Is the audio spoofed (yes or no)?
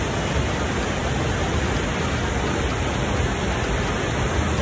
no